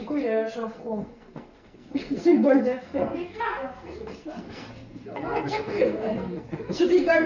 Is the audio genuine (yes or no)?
no